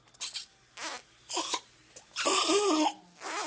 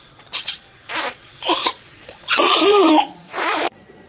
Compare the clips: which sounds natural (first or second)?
first